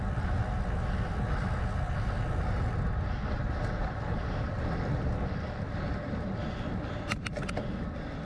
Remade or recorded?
recorded